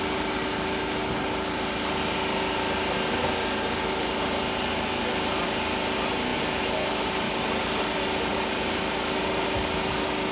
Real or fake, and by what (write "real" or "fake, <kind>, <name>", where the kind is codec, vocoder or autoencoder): real